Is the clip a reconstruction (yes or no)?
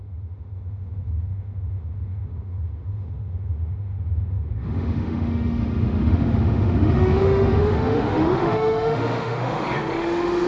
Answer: yes